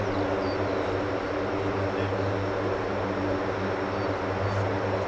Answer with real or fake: real